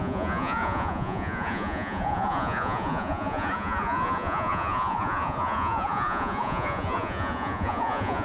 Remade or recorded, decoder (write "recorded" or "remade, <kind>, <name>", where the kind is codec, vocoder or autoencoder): remade, vocoder, Vocos